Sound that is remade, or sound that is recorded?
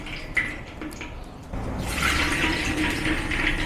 recorded